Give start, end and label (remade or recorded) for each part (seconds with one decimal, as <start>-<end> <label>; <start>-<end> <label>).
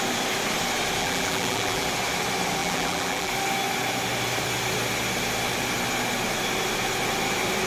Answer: 0.0-1.0 recorded; 1.0-1.9 remade; 1.9-2.6 recorded; 2.6-3.3 remade; 3.3-7.7 recorded